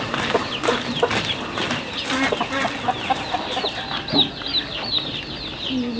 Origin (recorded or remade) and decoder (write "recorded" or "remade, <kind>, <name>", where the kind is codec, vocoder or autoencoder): recorded